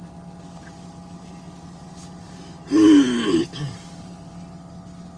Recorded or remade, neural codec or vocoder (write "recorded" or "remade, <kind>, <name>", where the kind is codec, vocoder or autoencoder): recorded